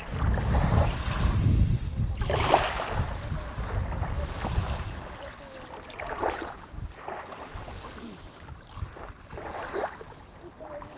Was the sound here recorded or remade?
recorded